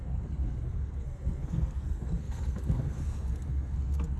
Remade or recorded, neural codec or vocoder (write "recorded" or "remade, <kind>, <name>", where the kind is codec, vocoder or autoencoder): remade, codec, SNAC